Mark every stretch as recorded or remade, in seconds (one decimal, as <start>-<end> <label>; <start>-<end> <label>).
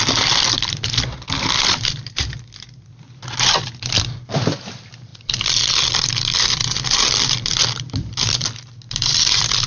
0.0-9.7 remade